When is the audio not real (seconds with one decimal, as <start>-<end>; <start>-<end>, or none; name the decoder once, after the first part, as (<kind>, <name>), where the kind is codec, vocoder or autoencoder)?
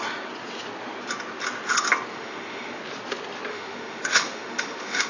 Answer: 2.1-2.8 (autoencoder, DAC-VAE); 3.5-5.1